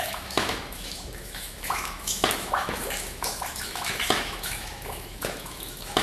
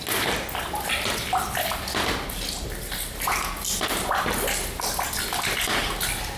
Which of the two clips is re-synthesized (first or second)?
first